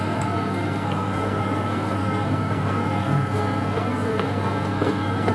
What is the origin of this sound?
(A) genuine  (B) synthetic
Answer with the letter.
B